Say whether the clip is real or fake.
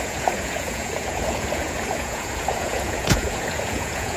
fake